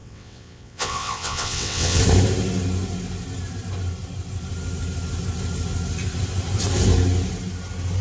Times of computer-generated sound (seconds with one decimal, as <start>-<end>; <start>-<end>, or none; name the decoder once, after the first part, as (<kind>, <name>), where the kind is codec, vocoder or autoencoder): 0.0-2.0 (vocoder, WaveNeXt)